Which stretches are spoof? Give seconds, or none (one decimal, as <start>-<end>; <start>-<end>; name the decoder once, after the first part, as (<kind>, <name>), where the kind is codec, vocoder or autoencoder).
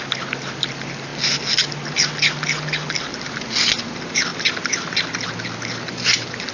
4.3-5.1 (vocoder, BigVGAN v2)